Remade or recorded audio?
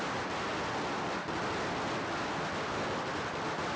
recorded